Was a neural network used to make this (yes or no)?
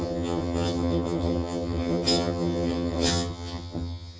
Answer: yes